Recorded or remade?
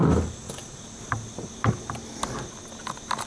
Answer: recorded